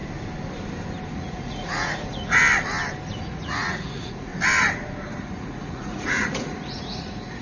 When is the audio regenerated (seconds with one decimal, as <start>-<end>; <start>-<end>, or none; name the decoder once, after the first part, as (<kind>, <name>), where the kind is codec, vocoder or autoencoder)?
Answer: 1.1-2.4 (vocoder, Vocos); 3.2-4.3; 5.1-7.4